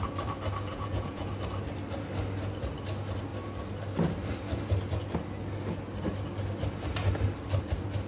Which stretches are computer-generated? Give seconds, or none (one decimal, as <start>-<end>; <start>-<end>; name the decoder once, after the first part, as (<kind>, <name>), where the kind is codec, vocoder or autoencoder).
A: 0.7-1.3 (vocoder, Vocos)